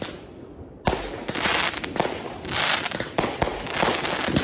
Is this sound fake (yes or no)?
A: no